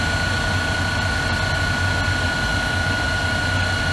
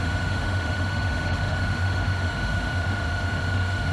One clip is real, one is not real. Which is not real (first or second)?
second